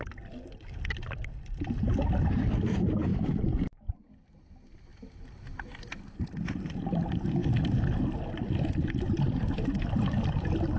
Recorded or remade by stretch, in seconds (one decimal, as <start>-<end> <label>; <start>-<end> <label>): 0.0-10.8 recorded